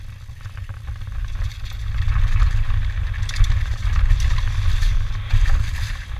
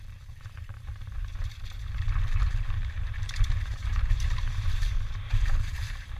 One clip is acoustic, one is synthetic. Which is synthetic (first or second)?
second